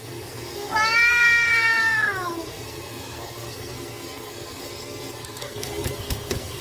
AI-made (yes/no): yes